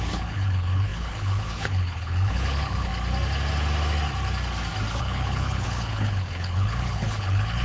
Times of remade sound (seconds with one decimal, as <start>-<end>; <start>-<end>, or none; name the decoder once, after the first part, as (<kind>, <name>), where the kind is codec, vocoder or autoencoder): 0.0-2.9 (codec, HILCodec); 5.0-7.6